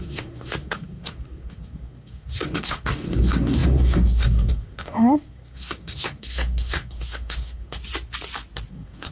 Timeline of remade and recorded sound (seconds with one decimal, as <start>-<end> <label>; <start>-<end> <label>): 0.0-7.8 remade; 7.8-8.7 recorded; 8.7-9.1 remade

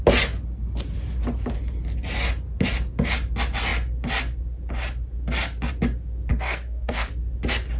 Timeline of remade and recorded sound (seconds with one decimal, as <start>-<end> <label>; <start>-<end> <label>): 0.0-6.3 recorded; 6.3-7.1 remade; 7.1-7.8 recorded

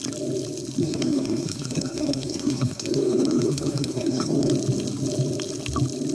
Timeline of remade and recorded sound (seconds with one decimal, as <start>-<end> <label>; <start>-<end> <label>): 0.0-0.8 recorded; 0.8-4.5 remade; 4.5-6.1 recorded

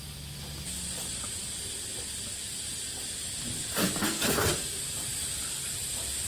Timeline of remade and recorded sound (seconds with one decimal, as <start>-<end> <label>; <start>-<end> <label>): 0.0-4.0 recorded; 4.0-4.5 remade; 4.5-6.3 recorded

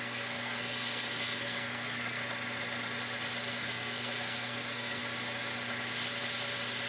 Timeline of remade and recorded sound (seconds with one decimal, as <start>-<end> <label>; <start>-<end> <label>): 0.0-2.2 remade; 2.2-3.5 recorded; 3.5-5.0 remade; 5.0-6.9 recorded

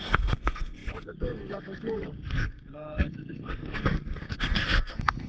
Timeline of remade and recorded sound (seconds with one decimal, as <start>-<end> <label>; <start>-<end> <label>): 0.0-5.3 remade

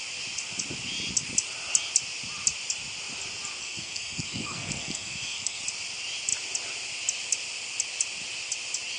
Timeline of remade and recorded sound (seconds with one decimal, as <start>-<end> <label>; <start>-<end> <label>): 0.0-3.6 recorded; 3.6-5.6 remade; 5.6-9.0 recorded